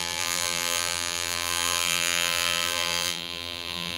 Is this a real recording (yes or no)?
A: no